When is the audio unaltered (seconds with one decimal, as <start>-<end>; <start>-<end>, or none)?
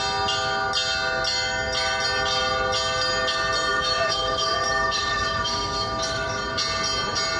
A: 0.0-3.7; 6.4-7.4